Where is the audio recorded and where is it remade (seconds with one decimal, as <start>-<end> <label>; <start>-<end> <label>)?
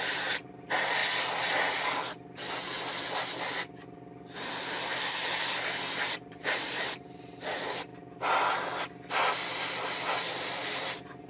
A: 0.0-1.0 remade; 1.0-6.0 recorded; 6.0-7.9 remade; 7.9-10.3 recorded; 10.3-11.3 remade